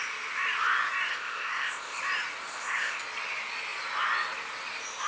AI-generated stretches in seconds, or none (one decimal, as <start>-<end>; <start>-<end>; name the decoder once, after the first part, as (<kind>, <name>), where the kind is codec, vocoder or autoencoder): 1.1-2.0 (codec, ZipCodec); 2.5-3.0